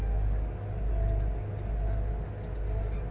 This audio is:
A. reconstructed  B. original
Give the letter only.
B